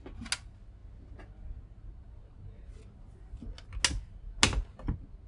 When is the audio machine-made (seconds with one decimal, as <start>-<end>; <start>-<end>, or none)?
none